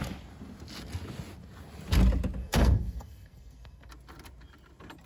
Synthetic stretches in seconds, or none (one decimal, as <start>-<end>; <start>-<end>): 2.4-3.9